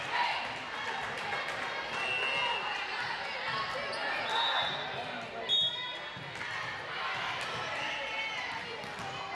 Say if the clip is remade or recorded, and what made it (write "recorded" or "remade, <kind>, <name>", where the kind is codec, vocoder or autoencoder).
recorded